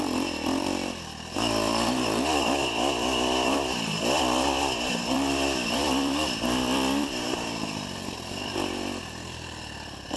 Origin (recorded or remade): remade